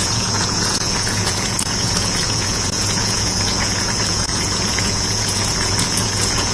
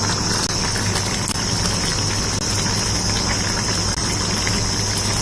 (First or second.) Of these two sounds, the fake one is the first